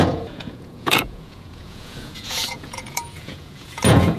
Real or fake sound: fake